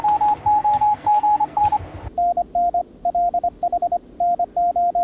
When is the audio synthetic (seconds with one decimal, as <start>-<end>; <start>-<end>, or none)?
0.6-1.6